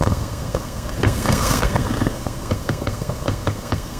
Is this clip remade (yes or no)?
yes